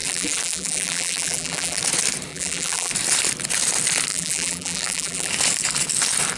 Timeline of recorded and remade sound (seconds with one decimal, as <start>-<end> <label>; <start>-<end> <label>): 0.0-1.8 remade; 1.8-2.3 recorded; 2.3-2.9 remade; 2.9-4.1 recorded; 4.1-5.3 remade; 5.3-6.4 recorded